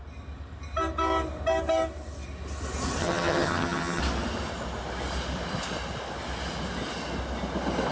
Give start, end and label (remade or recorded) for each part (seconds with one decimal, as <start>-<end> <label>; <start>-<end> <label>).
0.0-3.0 recorded; 3.0-4.0 remade; 4.0-7.9 recorded